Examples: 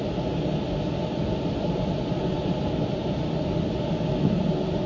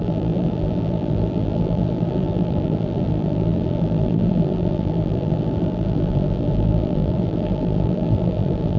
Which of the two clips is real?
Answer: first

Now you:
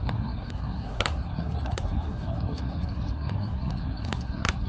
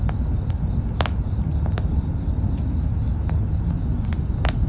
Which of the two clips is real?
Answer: second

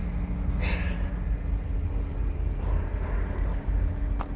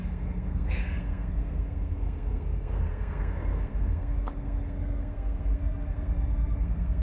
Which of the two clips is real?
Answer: first